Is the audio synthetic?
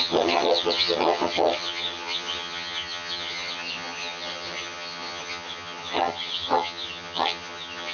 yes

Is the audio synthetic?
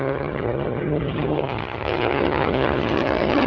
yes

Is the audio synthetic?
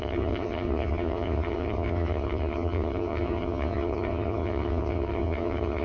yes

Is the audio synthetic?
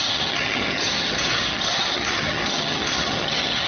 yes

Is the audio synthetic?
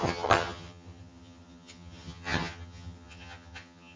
yes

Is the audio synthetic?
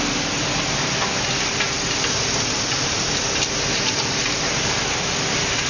no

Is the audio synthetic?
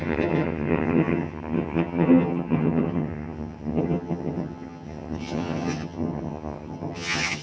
yes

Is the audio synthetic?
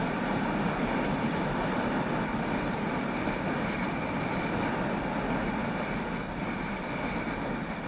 no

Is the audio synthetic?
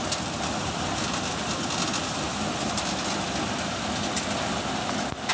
no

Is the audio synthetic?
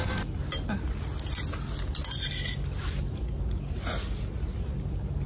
no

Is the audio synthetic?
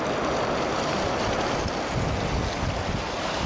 no